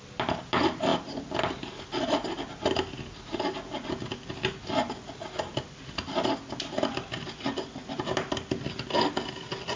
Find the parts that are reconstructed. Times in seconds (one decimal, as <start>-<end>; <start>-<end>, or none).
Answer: none